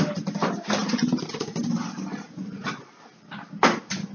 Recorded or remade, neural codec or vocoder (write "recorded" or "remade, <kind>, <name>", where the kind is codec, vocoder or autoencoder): recorded